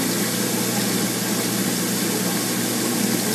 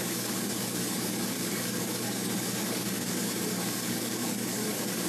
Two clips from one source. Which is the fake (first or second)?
second